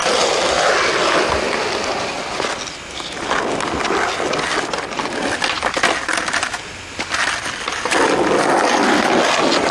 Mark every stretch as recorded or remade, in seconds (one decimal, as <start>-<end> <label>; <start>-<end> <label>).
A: 0.0-9.7 recorded